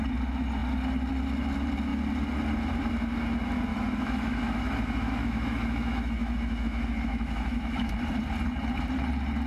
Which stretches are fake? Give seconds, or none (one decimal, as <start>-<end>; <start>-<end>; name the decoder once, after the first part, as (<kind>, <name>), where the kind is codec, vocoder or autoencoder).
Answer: 3.7-7.9 (autoencoder, DAC-VAE)